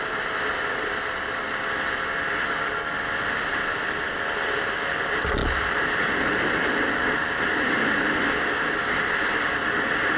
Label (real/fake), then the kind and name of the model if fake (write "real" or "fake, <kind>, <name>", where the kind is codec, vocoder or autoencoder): real